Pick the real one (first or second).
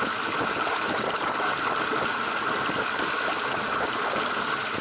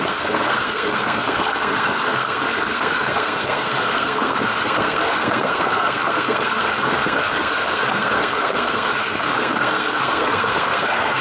first